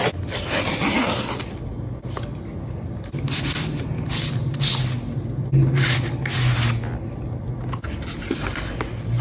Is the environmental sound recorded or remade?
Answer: recorded